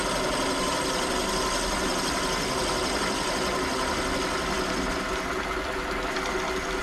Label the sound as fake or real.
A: real